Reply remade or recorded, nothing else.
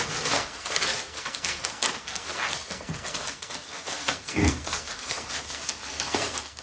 remade